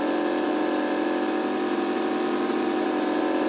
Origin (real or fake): fake